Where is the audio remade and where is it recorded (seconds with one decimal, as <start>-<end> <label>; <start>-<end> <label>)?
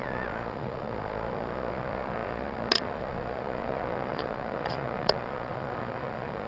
0.0-6.5 remade